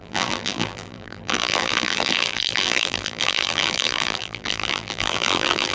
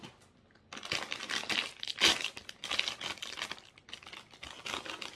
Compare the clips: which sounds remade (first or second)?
first